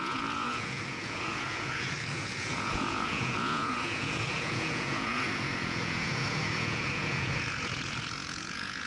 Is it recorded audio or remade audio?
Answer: remade